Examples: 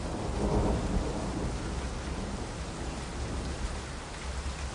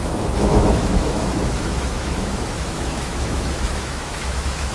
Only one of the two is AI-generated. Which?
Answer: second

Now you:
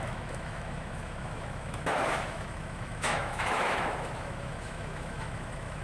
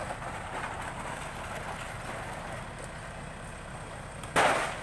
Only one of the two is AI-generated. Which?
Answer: first